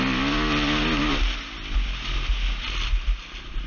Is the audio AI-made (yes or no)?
no